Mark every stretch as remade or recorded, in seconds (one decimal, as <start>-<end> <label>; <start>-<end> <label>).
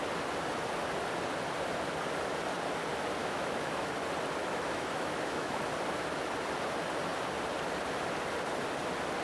0.0-3.2 recorded; 3.2-3.9 remade; 3.9-4.4 recorded; 4.4-5.6 remade; 5.6-9.2 recorded